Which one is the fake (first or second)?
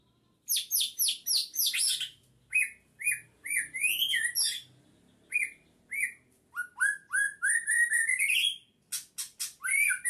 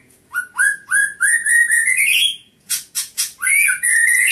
second